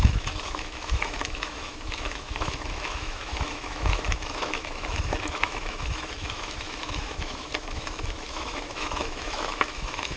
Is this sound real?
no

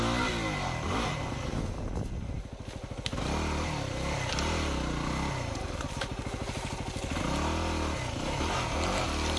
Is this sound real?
yes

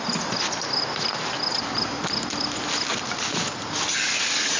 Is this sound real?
yes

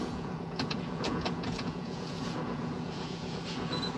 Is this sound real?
no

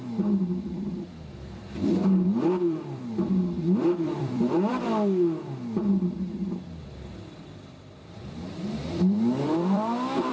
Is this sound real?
no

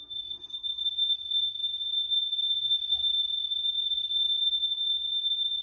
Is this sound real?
no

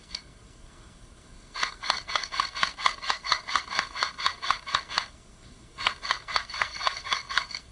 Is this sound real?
no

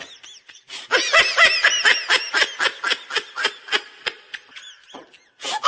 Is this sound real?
yes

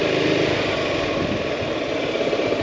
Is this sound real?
yes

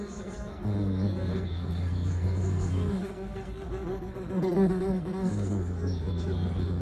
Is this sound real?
no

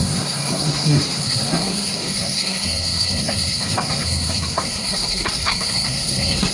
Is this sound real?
no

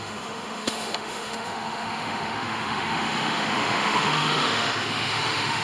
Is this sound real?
no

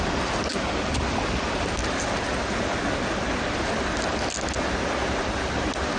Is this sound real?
yes